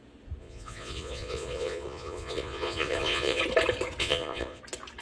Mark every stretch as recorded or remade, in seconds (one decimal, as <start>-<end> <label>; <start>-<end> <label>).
0.0-0.4 recorded; 0.4-3.4 remade; 3.4-4.0 recorded; 4.0-4.6 remade; 4.6-5.0 recorded